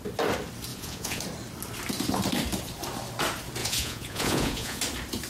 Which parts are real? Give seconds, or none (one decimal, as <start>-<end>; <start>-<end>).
0.0-0.7; 1.2-3.6; 4.8-5.3